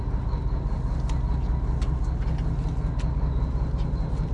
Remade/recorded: recorded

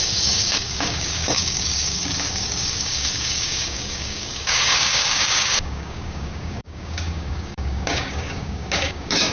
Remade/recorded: remade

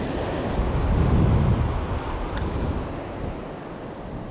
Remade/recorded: recorded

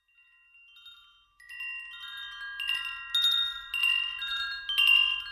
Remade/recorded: recorded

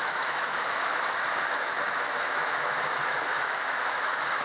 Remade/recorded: remade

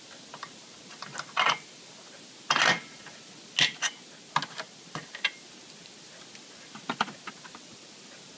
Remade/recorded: recorded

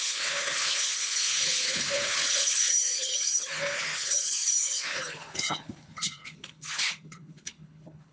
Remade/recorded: remade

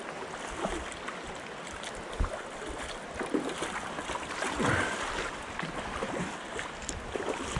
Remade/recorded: recorded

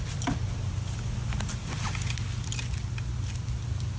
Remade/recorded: recorded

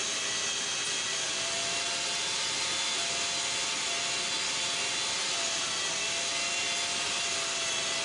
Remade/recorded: recorded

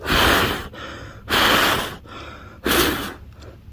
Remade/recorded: recorded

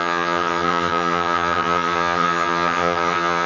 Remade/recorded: remade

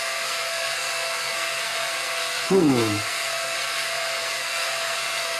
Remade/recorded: remade